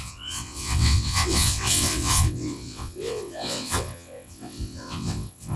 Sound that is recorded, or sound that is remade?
remade